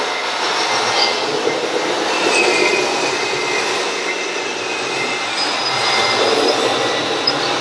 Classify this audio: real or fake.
real